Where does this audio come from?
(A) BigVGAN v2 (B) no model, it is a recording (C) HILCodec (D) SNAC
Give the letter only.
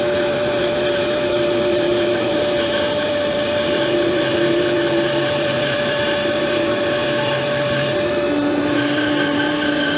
A